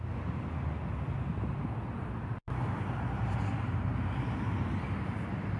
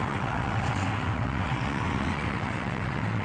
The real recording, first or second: first